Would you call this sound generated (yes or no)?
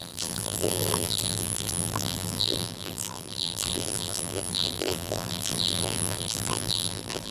yes